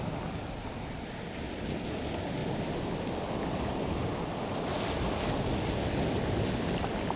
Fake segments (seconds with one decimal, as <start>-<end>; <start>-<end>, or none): none